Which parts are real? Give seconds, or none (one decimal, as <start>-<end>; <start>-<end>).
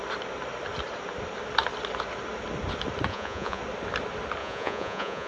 0.0-3.1; 3.6-4.4